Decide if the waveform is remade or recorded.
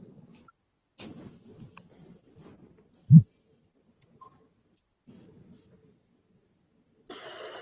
recorded